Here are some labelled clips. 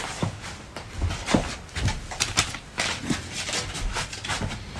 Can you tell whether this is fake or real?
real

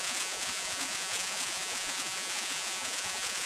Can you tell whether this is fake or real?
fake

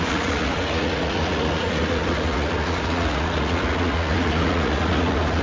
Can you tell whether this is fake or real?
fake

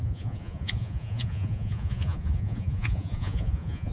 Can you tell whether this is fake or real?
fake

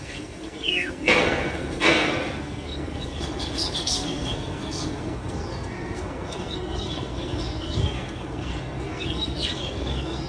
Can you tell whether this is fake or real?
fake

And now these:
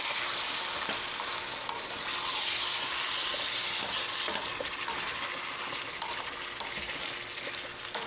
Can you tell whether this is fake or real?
real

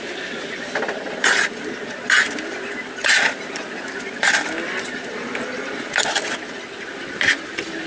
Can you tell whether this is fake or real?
real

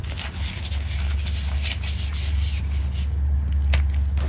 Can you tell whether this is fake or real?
real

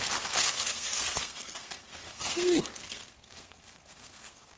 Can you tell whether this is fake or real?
fake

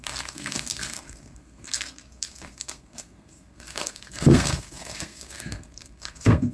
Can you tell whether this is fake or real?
fake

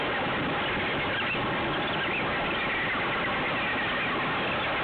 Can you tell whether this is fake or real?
real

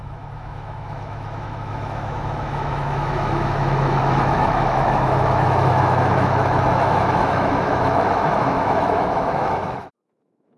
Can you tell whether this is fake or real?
fake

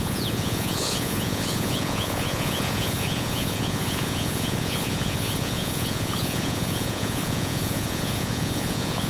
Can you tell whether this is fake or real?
fake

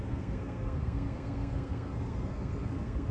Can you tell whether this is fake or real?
fake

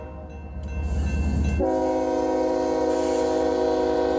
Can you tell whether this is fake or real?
real